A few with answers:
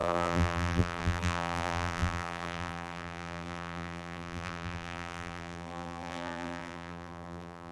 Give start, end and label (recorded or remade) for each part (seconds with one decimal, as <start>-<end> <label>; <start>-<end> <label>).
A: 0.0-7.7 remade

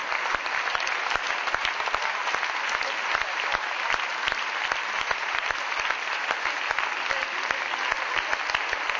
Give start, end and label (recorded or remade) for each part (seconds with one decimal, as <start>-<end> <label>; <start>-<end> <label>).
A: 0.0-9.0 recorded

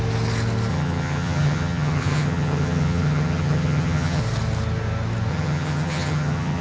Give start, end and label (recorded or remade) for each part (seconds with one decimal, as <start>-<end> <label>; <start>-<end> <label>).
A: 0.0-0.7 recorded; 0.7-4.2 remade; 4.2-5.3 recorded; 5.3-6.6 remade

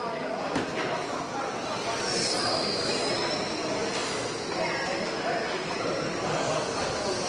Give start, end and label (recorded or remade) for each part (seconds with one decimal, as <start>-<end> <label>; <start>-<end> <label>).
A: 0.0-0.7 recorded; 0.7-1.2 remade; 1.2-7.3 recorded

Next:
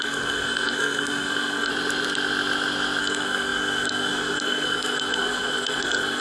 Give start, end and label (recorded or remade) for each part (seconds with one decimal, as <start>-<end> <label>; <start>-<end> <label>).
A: 0.0-1.7 remade; 1.7-3.0 recorded; 3.0-6.2 remade

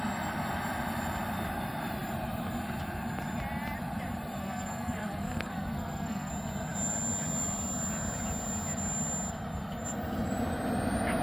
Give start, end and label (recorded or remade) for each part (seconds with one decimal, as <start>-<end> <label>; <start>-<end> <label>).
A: 0.0-4.4 recorded; 4.4-6.3 remade; 6.3-11.2 recorded

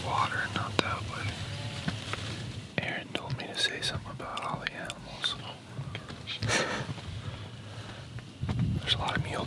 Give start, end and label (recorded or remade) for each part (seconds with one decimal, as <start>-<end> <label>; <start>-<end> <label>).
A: 0.0-4.3 remade; 4.3-9.0 recorded; 9.0-9.5 remade

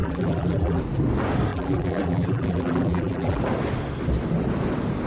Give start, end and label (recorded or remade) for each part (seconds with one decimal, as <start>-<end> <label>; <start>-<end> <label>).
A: 0.0-0.8 remade; 0.8-1.5 recorded; 1.5-3.4 remade; 3.4-5.1 recorded